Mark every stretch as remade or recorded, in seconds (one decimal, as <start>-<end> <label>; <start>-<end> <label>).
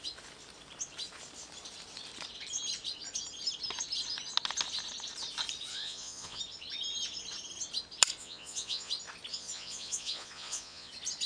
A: 0.0-5.7 recorded; 5.7-6.4 remade; 6.4-8.2 recorded; 8.2-8.9 remade; 8.9-9.3 recorded; 9.3-10.9 remade; 10.9-11.3 recorded